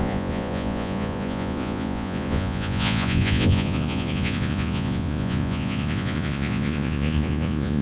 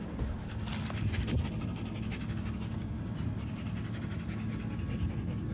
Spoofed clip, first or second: first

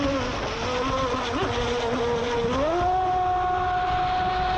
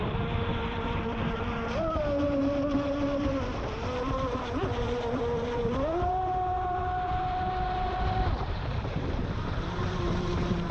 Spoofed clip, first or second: second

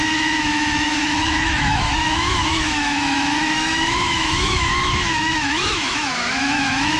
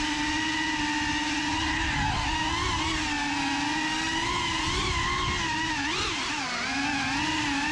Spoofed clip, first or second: first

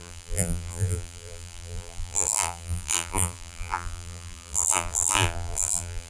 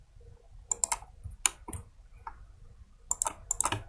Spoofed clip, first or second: first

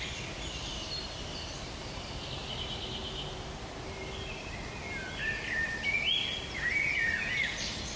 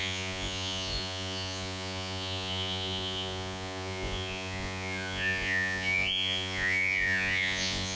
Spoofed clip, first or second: second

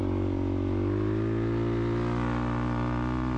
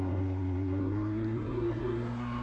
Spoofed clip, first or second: second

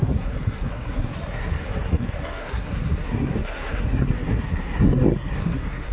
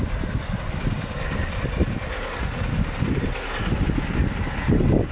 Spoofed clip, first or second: first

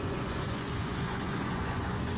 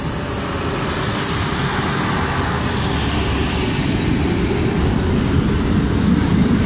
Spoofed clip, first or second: first